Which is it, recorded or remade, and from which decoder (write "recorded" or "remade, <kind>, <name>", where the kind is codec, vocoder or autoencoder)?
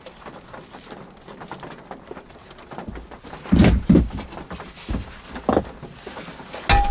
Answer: recorded